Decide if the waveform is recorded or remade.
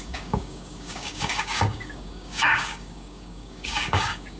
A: remade